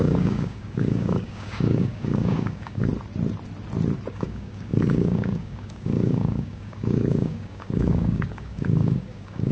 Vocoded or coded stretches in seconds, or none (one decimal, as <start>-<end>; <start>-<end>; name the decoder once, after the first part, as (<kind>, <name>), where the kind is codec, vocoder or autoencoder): 0.0-2.9 (codec, DAC); 4.1-9.5